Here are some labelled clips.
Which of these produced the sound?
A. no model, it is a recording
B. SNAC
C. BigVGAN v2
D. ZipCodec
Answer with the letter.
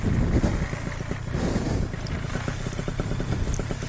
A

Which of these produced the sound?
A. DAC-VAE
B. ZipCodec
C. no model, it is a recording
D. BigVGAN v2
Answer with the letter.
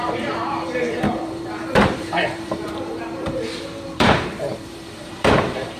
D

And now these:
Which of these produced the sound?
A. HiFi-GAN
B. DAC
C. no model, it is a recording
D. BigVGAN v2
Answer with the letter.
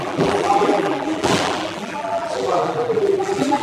D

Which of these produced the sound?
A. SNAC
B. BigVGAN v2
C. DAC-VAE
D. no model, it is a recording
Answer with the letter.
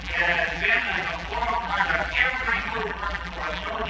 B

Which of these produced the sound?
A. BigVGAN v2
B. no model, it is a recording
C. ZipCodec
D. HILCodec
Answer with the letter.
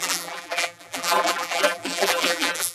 A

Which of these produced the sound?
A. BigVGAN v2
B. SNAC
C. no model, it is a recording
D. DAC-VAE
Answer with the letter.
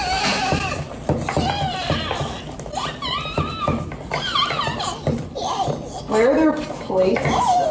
C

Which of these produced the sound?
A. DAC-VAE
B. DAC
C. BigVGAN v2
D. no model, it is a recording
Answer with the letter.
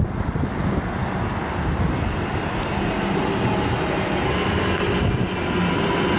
D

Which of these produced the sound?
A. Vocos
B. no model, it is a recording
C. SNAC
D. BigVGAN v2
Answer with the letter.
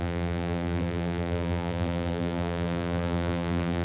D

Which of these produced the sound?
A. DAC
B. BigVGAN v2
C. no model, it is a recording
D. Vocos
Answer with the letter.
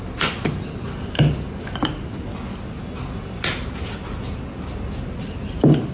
C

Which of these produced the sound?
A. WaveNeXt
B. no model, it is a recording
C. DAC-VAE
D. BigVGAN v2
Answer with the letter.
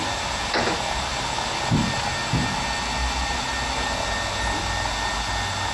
B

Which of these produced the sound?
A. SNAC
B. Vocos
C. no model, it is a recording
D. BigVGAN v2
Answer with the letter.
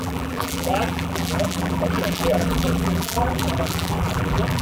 D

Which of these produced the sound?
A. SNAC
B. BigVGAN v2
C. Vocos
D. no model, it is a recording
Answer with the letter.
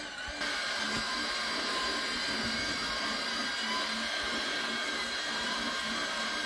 B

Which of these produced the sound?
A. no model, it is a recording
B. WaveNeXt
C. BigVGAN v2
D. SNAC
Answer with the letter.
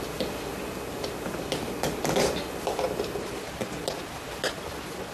A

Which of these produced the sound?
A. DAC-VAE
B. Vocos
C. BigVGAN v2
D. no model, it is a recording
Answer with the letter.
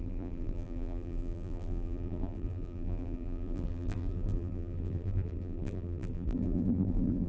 C